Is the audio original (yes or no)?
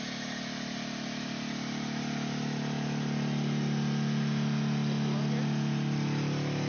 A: yes